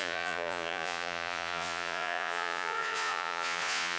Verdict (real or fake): fake